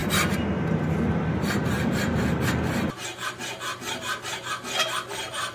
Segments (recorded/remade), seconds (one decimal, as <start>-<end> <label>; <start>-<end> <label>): 0.0-5.5 recorded